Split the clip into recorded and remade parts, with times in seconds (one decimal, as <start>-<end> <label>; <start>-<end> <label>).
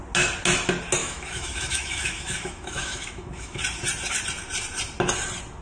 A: 0.0-1.0 recorded; 1.0-3.6 remade; 3.6-5.6 recorded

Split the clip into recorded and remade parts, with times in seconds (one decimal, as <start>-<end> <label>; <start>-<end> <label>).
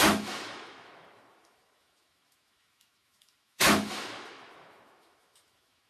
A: 0.0-5.9 remade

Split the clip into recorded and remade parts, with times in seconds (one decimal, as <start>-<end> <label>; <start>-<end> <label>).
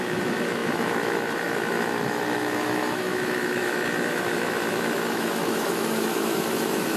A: 0.0-7.0 remade